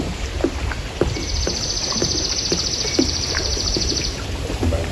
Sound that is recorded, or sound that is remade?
remade